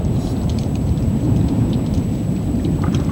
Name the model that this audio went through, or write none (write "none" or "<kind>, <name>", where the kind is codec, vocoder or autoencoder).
vocoder, BigVGAN v2